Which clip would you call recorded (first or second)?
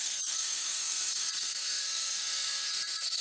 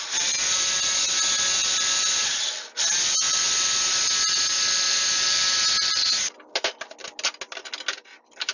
second